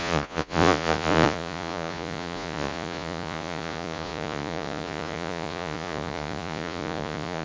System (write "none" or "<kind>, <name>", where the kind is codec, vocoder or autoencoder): vocoder, Vocos